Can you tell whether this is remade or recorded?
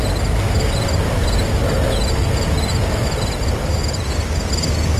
recorded